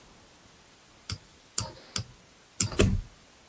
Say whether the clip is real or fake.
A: real